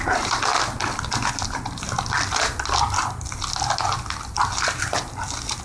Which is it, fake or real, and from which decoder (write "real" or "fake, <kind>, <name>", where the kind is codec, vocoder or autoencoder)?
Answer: real